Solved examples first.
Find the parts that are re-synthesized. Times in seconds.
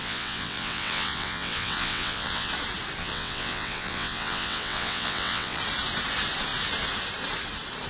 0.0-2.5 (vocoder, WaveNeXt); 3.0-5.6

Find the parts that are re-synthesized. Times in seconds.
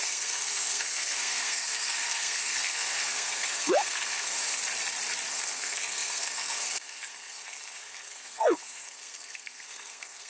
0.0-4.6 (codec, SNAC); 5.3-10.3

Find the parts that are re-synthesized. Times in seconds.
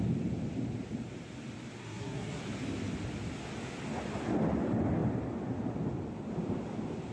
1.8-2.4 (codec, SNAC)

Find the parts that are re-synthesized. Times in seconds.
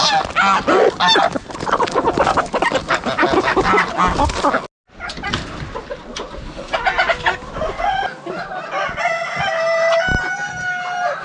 none